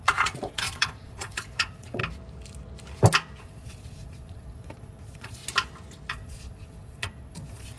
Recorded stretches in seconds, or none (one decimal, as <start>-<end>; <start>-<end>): 2.0-3.4; 5.4-6.1